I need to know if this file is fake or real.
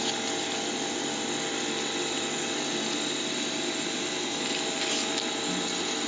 real